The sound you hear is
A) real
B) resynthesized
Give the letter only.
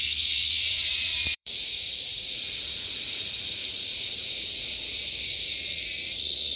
B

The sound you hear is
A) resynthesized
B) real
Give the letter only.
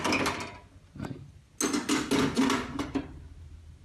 B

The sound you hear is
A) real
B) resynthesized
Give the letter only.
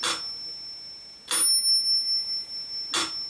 A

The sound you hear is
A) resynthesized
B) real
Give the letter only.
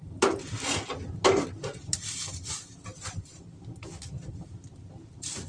B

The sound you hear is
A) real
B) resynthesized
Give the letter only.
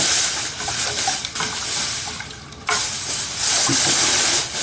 A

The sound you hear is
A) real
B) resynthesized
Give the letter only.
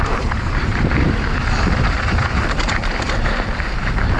B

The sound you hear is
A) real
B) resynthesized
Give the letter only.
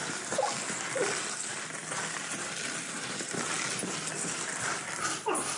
A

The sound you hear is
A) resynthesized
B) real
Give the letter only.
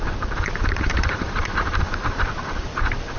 A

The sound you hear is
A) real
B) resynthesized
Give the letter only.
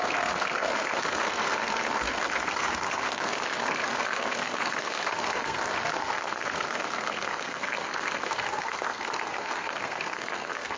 B